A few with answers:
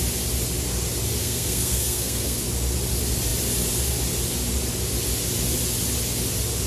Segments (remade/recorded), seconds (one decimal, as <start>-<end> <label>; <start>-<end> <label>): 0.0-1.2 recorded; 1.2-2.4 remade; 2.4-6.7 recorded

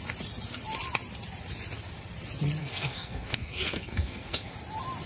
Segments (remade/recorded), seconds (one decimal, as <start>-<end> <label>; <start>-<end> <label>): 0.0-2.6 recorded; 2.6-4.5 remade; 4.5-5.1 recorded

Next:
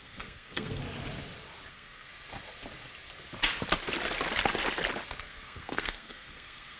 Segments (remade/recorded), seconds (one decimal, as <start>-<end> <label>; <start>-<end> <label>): 0.0-0.8 remade; 0.8-1.7 recorded; 1.7-2.1 remade; 2.1-5.2 recorded; 5.2-6.8 remade

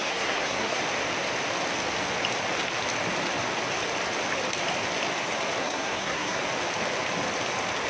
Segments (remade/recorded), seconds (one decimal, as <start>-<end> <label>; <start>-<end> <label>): 0.0-0.8 remade; 0.8-5.6 recorded; 5.6-6.4 remade; 6.4-7.9 recorded

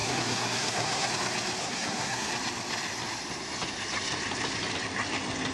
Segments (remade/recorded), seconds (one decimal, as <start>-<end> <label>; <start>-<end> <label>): 0.0-1.1 remade; 1.1-1.6 recorded; 1.6-2.3 remade; 2.3-5.5 recorded

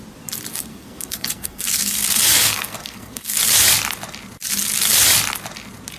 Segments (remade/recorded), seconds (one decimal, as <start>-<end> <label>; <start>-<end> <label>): 0.0-0.5 recorded; 0.5-3.4 remade; 3.4-6.0 recorded